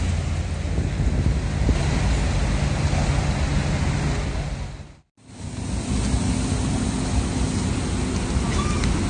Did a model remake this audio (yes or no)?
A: no